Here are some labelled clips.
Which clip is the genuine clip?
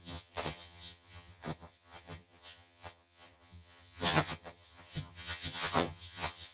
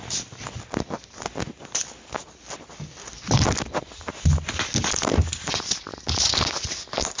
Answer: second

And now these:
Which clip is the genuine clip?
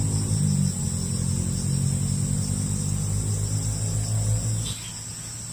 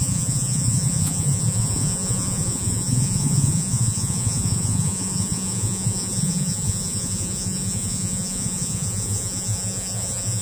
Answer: first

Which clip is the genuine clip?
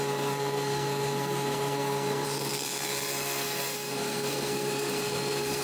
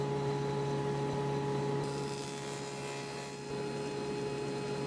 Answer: second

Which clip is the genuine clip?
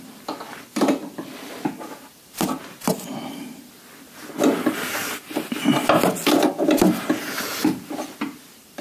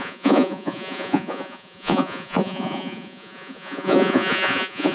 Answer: first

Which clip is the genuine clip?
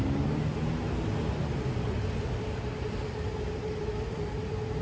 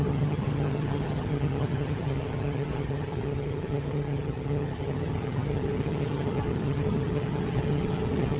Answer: first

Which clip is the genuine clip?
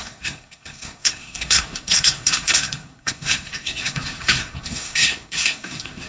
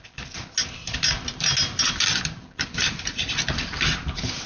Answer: second